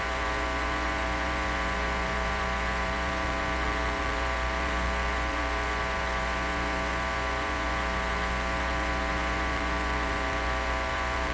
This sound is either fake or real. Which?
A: fake